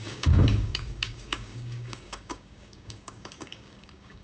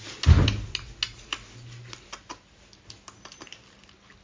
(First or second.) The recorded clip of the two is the second